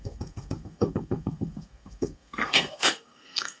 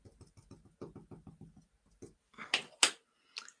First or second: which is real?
second